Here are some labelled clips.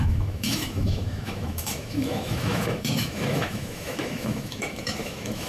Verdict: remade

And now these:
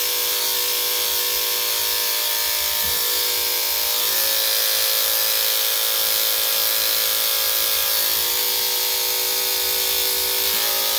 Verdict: recorded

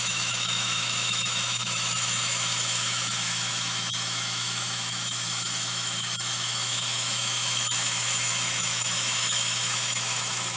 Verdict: remade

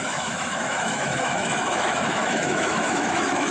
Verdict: remade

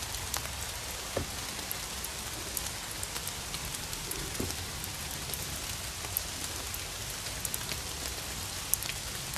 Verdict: recorded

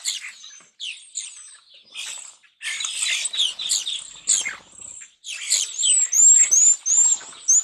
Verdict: recorded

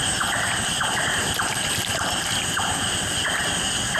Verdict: recorded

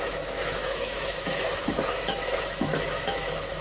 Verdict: remade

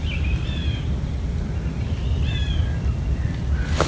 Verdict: recorded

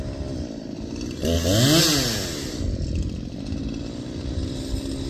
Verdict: recorded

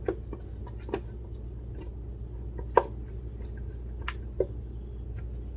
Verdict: recorded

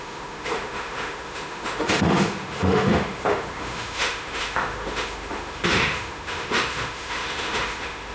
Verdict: remade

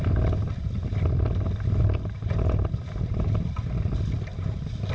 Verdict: recorded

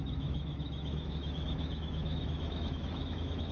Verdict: remade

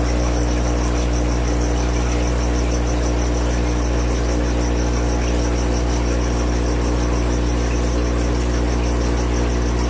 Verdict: recorded